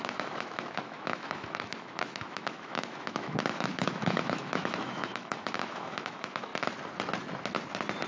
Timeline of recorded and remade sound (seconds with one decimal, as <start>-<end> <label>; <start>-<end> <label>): 0.0-6.5 remade; 6.5-8.1 recorded